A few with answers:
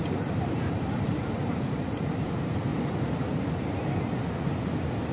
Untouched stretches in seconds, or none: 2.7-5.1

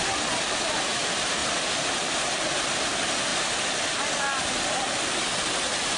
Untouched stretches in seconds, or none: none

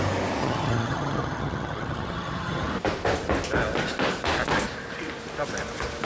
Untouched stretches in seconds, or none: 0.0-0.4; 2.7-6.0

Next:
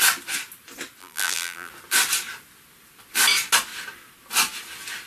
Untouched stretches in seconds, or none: 0.0-1.0; 1.7-5.1

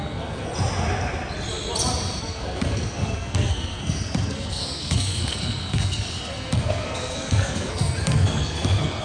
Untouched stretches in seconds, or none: 0.5-2.2

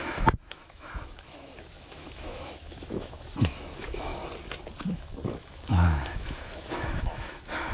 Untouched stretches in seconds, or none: 4.1-4.9